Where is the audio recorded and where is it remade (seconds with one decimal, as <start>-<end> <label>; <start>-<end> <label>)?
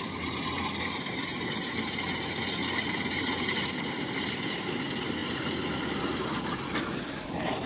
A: 0.0-1.3 remade; 1.3-3.5 recorded; 3.5-7.7 remade